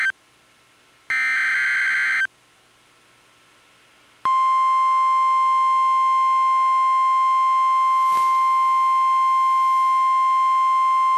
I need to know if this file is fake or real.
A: real